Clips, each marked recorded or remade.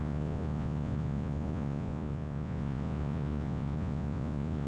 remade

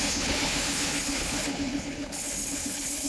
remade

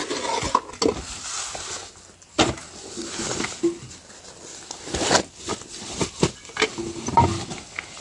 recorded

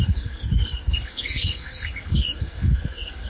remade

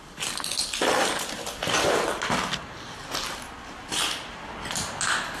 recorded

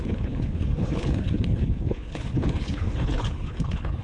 remade